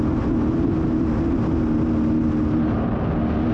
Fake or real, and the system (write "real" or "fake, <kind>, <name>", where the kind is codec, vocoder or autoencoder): real